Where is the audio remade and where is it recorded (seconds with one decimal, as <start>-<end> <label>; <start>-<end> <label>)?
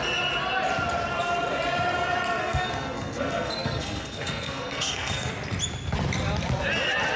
0.0-2.4 recorded; 2.4-5.3 remade; 5.3-7.2 recorded